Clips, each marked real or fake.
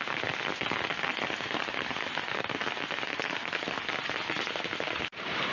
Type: real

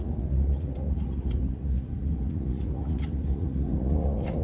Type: fake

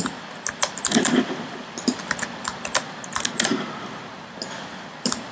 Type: real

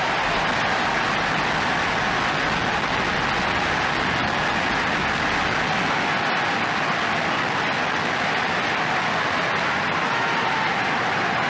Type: real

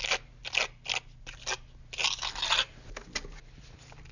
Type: real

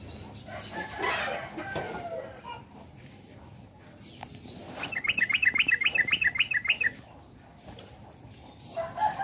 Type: real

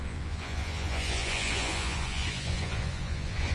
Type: fake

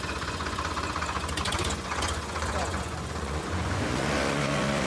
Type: fake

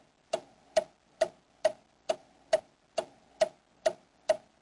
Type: real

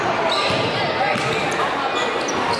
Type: real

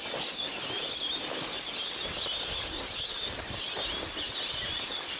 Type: real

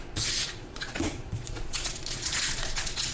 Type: fake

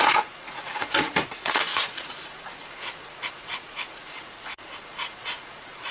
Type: fake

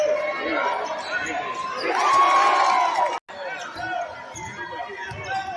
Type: real